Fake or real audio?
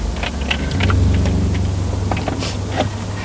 real